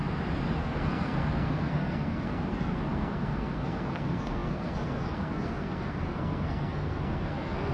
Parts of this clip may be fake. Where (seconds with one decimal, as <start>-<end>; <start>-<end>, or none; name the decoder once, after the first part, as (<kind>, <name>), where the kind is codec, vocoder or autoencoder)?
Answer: 0.6-7.7 (codec, SNAC)

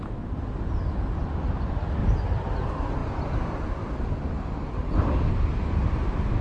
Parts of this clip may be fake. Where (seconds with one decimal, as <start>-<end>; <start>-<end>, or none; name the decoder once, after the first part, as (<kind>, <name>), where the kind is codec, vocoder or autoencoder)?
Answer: 2.0-2.5 (vocoder, BigVGAN v2)

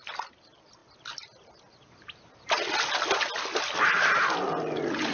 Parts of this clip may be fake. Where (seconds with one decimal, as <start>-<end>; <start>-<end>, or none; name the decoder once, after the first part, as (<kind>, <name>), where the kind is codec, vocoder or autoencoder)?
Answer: none

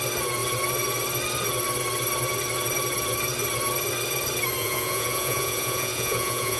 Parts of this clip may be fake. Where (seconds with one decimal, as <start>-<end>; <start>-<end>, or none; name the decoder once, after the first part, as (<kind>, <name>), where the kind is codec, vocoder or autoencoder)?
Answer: 4.6-6.6 (vocoder, Vocos)

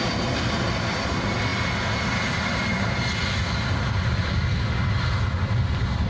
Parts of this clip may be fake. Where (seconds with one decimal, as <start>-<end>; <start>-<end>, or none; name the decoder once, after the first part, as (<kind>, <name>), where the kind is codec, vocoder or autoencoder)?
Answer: none